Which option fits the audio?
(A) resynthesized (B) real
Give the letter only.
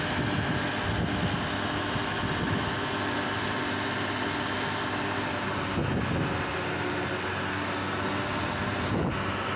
B